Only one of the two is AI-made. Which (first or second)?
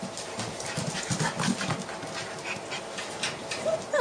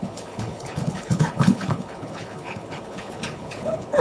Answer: second